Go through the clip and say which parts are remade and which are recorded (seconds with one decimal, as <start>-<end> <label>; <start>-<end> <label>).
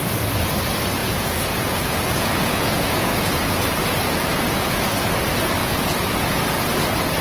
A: 0.0-1.0 recorded; 1.0-5.0 remade; 5.0-5.6 recorded; 5.6-6.4 remade; 6.4-7.2 recorded